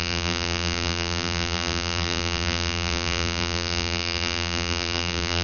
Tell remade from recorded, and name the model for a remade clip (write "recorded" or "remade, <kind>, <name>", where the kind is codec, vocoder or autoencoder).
remade, vocoder, BigVGAN v2